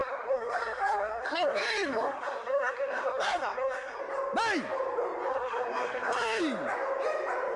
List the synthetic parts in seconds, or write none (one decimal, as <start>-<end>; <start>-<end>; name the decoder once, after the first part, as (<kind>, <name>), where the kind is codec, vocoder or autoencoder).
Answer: 0.0-4.0 (codec, SNAC); 5.3-6.4